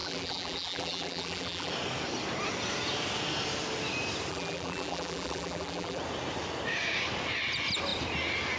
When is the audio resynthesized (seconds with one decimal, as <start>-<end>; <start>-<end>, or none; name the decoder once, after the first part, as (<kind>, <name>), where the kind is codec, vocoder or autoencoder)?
0.0-1.7 (vocoder, BigVGAN v2); 4.3-6.0